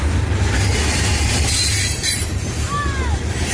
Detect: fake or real real